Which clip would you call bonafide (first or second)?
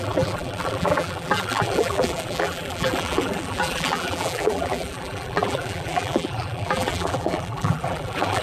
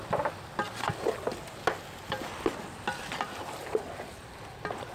second